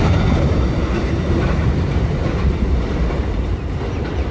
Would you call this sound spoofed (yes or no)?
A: no